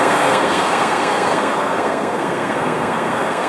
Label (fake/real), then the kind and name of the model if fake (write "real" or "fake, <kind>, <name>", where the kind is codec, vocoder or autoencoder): fake, codec, SNAC